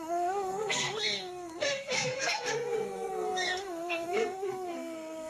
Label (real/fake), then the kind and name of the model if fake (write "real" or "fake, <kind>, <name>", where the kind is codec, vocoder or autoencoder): fake, codec, SNAC